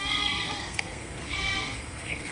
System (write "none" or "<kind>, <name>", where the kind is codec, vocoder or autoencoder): codec, SNAC